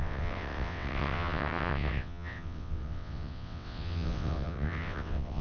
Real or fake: fake